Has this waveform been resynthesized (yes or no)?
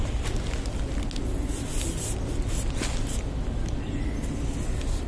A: no